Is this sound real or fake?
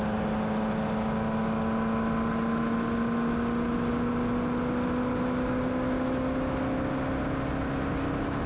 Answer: real